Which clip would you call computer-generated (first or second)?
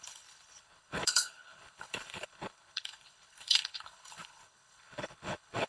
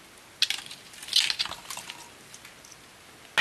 first